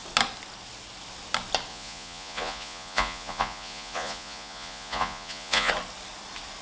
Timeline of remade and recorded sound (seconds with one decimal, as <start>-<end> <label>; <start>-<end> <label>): 0.0-1.7 recorded; 1.7-5.7 remade; 5.7-6.6 recorded